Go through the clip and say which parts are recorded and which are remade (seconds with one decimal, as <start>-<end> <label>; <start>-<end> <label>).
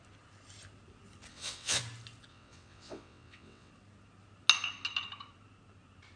0.0-1.3 recorded; 1.3-1.8 remade; 1.8-2.3 recorded; 2.3-3.7 remade; 3.7-6.2 recorded